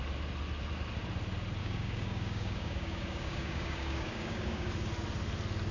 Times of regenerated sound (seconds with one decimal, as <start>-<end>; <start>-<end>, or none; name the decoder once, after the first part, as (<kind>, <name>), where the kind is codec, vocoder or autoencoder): 1.6-4.7 (codec, DAC)